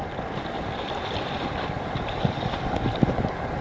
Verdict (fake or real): real